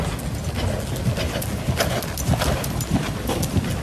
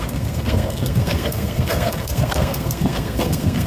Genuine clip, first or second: first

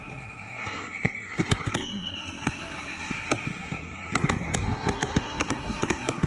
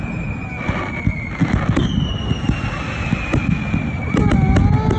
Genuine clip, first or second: second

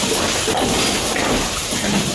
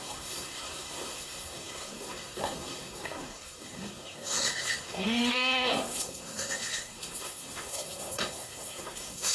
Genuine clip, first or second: first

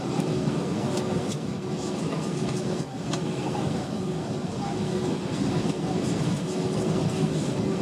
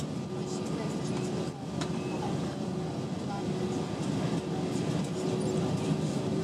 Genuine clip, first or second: second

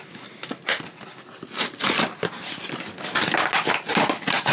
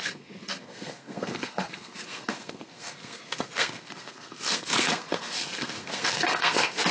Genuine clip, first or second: first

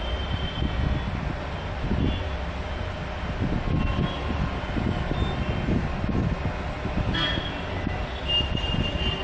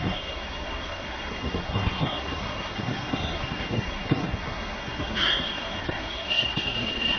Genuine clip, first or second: first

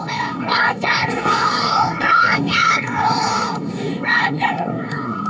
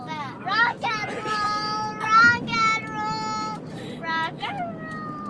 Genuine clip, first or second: second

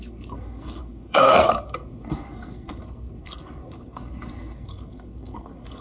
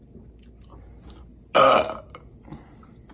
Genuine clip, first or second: second